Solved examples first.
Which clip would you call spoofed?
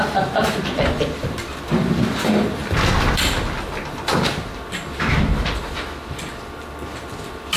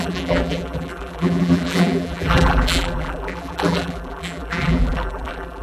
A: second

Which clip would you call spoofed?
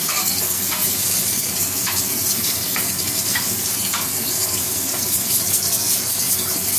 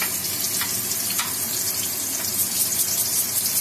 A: first